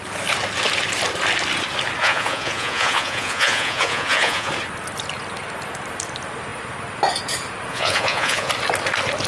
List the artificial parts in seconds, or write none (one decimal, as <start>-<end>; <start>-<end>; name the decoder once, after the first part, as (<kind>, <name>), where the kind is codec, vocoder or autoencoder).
2.0-4.5 (vocoder, Vocos); 7.7-8.5

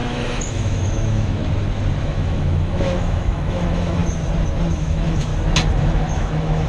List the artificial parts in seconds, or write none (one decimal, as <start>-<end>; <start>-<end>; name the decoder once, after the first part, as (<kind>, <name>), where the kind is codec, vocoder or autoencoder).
0.0-1.4 (autoencoder, DAC-VAE); 2.0-4.0; 4.7-5.3; 5.8-6.7

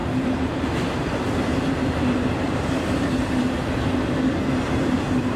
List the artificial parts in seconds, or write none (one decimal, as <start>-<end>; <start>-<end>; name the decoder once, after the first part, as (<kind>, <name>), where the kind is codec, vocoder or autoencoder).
0.0-3.6 (vocoder, BigVGAN v2); 4.5-5.4